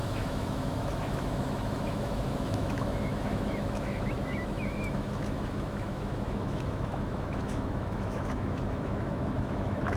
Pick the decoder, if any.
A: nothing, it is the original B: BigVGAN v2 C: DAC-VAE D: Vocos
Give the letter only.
C